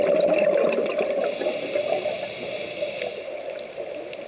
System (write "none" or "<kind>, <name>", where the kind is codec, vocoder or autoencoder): none